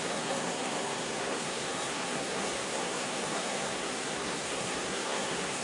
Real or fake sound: fake